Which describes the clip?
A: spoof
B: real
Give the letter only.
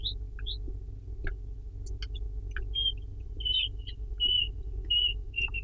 B